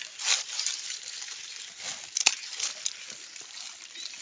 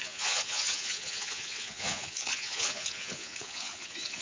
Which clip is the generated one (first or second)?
second